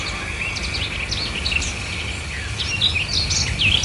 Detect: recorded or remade recorded